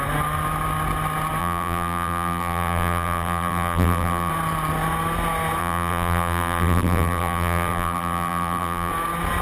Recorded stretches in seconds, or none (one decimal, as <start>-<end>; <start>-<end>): 0.0-1.4; 4.3-5.6; 8.9-9.4